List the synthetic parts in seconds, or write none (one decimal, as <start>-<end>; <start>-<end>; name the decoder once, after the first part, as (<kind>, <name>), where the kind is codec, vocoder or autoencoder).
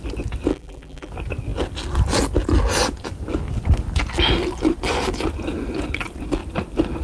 0.5-1.1 (vocoder, BigVGAN v2)